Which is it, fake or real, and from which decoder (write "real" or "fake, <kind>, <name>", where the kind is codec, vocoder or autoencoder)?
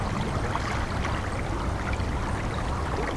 real